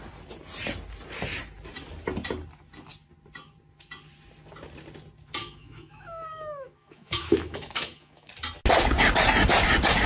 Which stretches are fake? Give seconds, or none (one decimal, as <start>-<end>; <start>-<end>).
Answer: 5.4-8.3